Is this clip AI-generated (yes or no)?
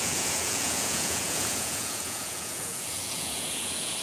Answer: yes